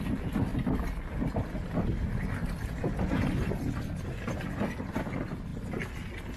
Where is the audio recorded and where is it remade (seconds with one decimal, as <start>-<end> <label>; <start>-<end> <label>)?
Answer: 0.0-6.4 recorded